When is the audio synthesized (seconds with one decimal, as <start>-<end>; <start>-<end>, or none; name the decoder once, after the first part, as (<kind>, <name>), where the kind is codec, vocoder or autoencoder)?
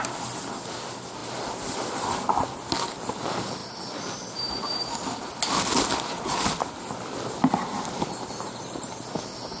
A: none